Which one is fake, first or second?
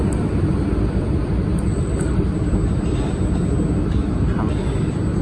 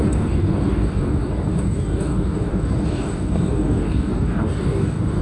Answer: second